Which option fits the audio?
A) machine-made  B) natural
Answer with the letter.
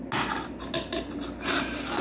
B